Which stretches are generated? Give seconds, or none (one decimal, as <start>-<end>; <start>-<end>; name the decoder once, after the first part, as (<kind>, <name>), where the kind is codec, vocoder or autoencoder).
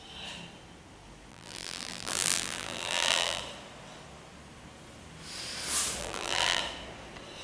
1.3-3.4 (vocoder, BigVGAN v2); 6.0-6.6